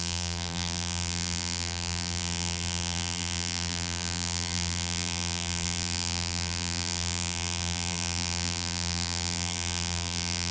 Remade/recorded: remade